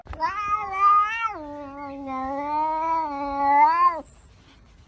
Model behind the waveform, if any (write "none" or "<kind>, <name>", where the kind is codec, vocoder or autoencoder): none